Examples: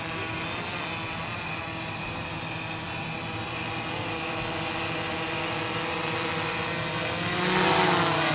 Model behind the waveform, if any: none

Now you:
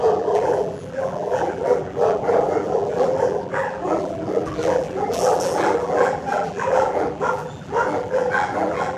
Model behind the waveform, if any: vocoder, BigVGAN v2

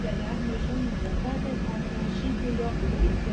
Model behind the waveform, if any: none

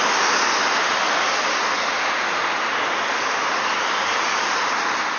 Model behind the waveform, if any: none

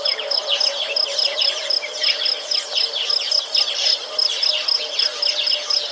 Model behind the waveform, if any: none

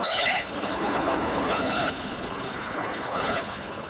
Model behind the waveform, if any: codec, HILCodec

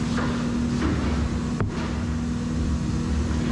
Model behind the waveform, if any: none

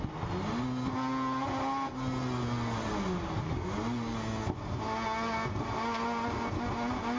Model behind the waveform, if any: none